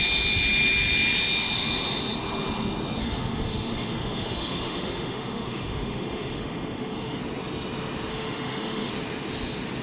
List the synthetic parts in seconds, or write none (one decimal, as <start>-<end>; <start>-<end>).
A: 3.0-7.2; 8.1-8.9